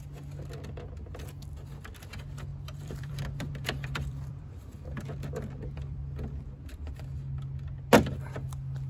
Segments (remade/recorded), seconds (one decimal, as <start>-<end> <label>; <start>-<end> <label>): 0.0-2.5 recorded; 2.5-6.9 remade; 6.9-8.9 recorded